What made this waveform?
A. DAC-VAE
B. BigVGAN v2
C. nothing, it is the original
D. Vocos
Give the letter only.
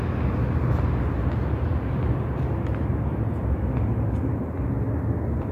C